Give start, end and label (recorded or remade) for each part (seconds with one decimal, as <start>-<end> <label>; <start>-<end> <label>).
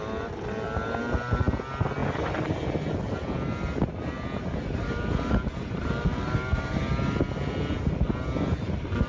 0.0-9.1 recorded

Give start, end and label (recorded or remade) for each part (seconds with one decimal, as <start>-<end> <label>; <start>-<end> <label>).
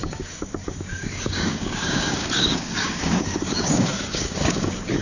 0.0-5.0 remade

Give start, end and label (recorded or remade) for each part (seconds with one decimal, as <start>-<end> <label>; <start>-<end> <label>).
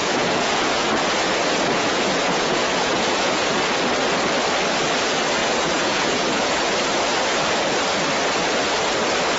0.0-3.5 remade; 3.5-5.4 recorded; 5.4-6.7 remade; 6.7-9.4 recorded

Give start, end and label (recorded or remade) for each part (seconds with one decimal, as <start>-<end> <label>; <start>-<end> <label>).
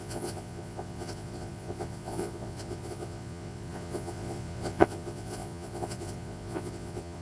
0.0-7.2 remade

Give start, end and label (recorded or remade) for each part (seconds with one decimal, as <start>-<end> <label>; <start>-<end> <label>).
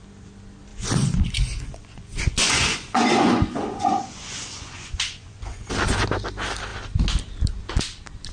0.0-0.7 recorded; 0.7-5.7 remade; 5.7-8.3 recorded